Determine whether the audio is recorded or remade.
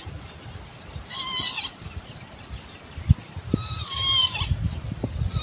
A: recorded